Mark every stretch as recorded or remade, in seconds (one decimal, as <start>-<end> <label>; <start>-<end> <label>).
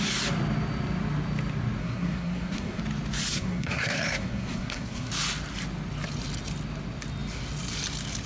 0.0-1.8 recorded; 1.8-2.8 remade; 2.8-3.3 recorded; 3.3-5.1 remade; 5.1-8.3 recorded